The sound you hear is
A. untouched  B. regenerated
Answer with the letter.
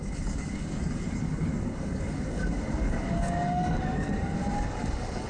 B